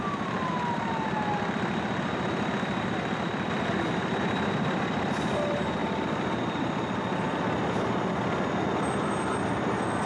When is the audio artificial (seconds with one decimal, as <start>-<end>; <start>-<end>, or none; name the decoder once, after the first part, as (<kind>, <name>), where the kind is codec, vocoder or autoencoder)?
none